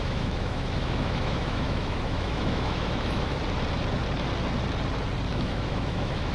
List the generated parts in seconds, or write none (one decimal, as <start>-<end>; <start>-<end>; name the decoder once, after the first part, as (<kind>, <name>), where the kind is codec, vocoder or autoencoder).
0.0-3.4 (autoencoder, DAC-VAE); 5.3-6.3

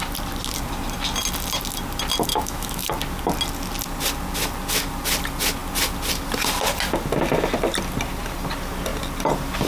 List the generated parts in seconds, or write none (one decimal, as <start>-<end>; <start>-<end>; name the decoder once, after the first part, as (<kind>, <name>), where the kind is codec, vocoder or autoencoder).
2.3-2.9 (autoencoder, DAC-VAE)